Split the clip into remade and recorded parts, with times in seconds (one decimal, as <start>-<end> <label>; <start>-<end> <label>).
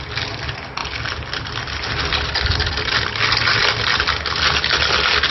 0.0-5.3 recorded